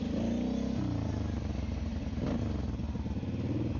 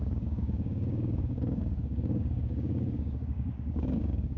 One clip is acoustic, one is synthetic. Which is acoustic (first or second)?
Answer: first